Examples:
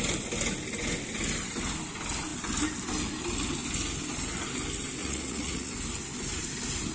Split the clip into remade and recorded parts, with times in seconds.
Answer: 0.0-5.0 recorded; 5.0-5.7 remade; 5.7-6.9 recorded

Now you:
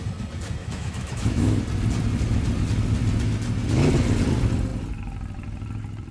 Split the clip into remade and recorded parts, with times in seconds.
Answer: 0.0-0.6 recorded; 0.6-1.6 remade; 1.6-6.1 recorded

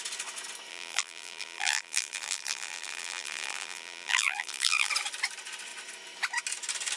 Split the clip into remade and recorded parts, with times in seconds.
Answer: 0.0-0.7 recorded; 0.7-4.9 remade; 4.9-7.0 recorded

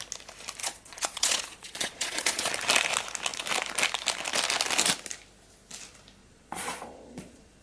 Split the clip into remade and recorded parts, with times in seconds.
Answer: 0.0-0.6 recorded; 0.6-2.5 remade; 2.5-6.2 recorded; 6.2-7.6 remade

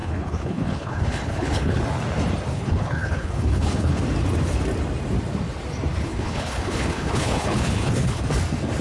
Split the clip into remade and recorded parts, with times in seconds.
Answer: 0.0-1.8 remade; 1.8-2.5 recorded; 2.5-4.0 remade; 4.0-6.0 recorded; 6.0-8.2 remade; 8.2-8.8 recorded

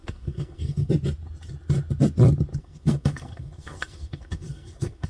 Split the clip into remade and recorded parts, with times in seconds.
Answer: 0.0-0.9 remade; 0.9-2.6 recorded; 2.6-5.1 remade

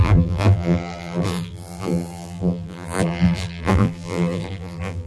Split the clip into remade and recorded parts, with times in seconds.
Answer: 0.0-5.1 remade

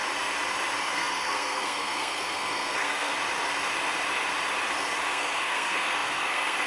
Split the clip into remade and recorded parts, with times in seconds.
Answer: 0.0-0.9 recorded; 0.9-3.1 remade; 3.1-5.1 recorded; 5.1-6.7 remade